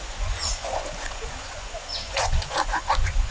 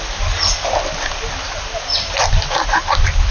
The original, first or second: second